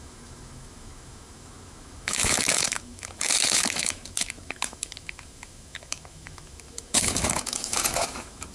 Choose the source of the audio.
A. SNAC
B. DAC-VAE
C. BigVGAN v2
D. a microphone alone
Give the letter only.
B